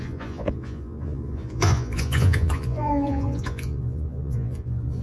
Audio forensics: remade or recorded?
remade